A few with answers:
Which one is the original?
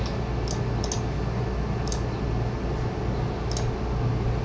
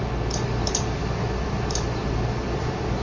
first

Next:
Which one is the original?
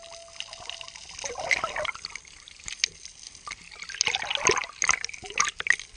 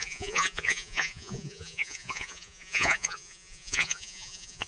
first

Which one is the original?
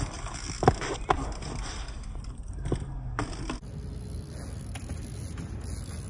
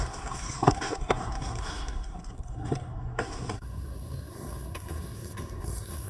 first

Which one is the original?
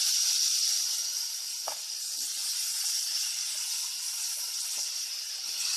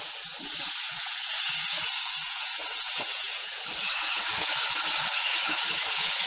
first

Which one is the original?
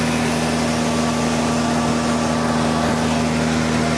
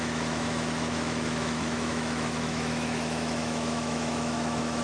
first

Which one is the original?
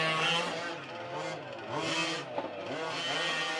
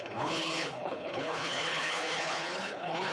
first